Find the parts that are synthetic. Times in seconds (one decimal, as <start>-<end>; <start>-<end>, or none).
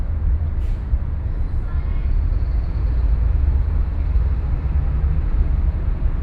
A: 0.0-3.9; 4.7-6.2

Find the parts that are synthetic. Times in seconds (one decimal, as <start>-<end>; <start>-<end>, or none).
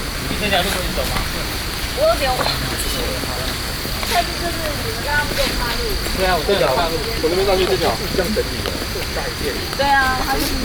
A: none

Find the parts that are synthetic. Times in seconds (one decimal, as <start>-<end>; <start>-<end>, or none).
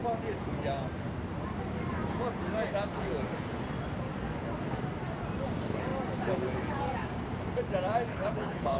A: 8.1-8.8